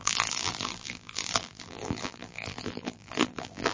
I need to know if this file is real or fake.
fake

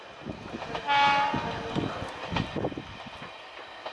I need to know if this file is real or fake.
real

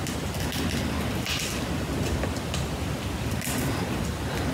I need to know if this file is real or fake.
real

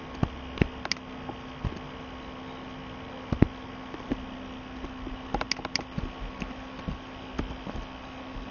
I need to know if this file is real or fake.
real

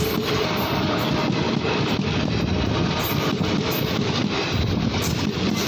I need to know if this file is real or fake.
real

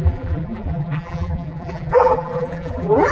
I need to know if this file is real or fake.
fake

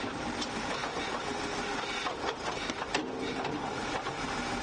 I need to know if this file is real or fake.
real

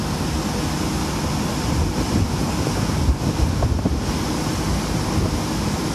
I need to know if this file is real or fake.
real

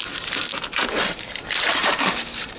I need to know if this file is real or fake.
fake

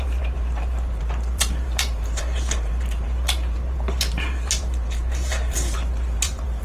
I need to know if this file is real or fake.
fake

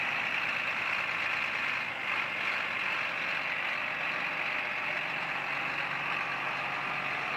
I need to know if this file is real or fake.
real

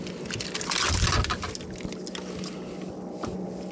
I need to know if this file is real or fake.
real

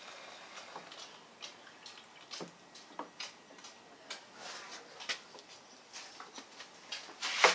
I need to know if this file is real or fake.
real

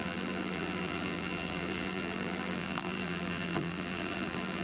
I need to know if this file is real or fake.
fake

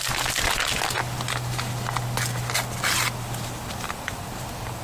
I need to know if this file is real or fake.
real